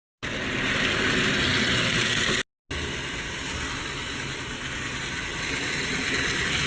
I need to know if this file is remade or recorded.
recorded